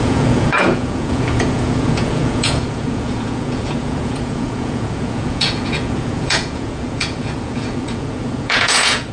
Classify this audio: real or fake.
fake